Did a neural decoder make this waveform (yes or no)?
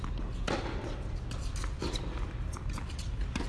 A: no